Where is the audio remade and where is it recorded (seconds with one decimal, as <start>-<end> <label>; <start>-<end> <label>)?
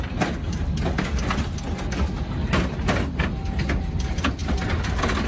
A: 0.0-5.3 recorded